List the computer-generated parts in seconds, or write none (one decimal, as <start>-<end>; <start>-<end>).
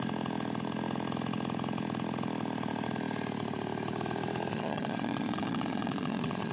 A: 4.5-6.5